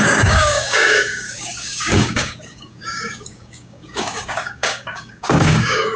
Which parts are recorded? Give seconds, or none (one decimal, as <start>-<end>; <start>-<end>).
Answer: none